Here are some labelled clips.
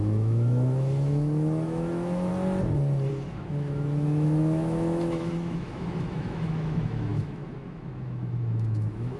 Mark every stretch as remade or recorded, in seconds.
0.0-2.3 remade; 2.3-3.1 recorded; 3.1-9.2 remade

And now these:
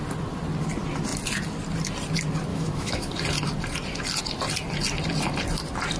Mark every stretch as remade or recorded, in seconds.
0.0-2.5 recorded; 2.5-3.1 remade; 3.1-6.0 recorded